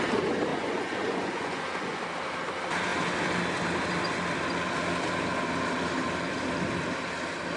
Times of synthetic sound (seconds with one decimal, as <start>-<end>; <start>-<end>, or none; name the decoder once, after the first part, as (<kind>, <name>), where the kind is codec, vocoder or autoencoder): 0.5-2.0 (vocoder, Vocos)